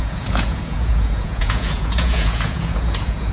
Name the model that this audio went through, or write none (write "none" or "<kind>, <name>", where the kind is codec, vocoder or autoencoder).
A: vocoder, Vocos